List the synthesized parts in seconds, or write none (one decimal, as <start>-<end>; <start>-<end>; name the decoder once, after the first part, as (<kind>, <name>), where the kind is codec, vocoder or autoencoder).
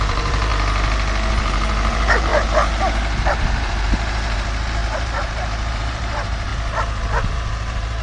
0.0-0.5 (vocoder, BigVGAN v2); 1.3-2.3; 3.3-6.5; 7.2-8.0